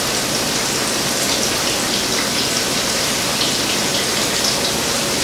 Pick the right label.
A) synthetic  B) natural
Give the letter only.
B